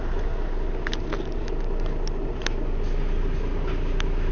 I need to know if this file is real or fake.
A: real